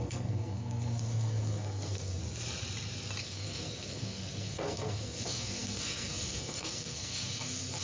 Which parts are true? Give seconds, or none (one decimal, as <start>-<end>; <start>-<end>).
2.2-3.2